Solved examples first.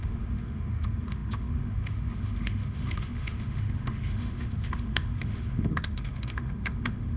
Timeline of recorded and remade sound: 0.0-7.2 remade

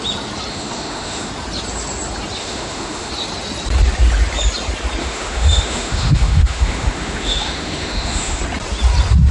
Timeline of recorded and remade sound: 0.0-0.5 recorded; 0.5-1.3 remade; 1.3-2.4 recorded; 2.4-3.1 remade; 3.1-5.0 recorded; 5.0-8.4 remade; 8.4-9.3 recorded

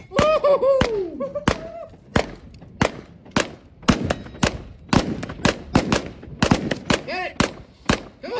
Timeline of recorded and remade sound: 0.0-8.4 recorded

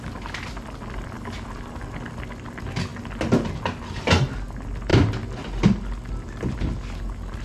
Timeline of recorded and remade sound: 0.0-7.4 recorded

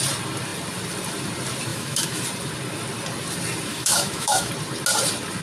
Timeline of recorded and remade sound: 0.0-1.7 recorded; 1.7-2.2 remade; 2.2-3.7 recorded; 3.7-4.5 remade; 4.5-5.4 recorded

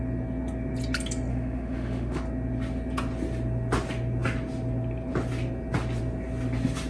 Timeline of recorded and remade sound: 0.0-1.3 recorded; 1.3-2.2 remade; 2.2-6.9 recorded